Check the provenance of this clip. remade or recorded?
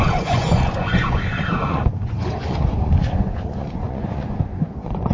remade